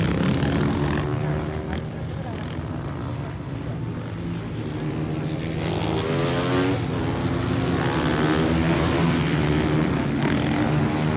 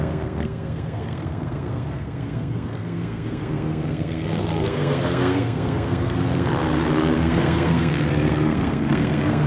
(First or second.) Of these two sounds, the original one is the first